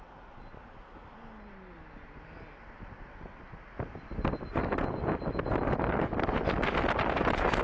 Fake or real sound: real